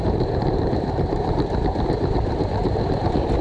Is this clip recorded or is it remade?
remade